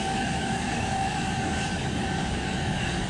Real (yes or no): no